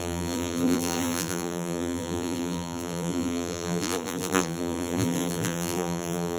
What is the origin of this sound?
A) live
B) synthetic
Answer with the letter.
B